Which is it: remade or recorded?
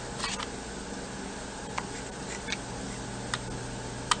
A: recorded